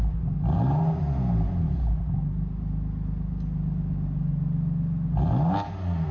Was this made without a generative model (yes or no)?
yes